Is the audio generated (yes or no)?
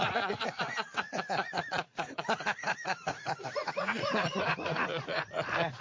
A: yes